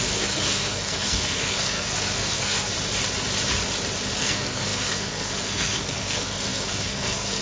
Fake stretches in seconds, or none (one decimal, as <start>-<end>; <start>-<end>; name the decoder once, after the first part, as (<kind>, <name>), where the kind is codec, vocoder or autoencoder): 0.0-2.7 (codec, SNAC); 4.2-7.4